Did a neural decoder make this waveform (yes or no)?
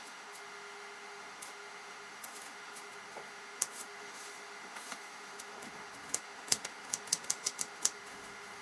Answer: yes